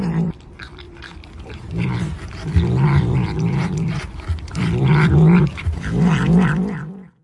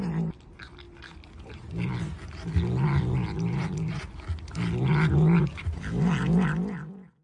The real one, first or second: second